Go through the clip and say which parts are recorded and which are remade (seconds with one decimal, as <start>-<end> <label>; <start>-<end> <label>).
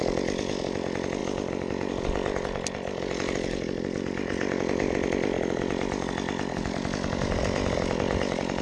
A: 0.0-8.6 recorded